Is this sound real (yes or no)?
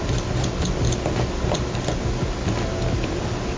yes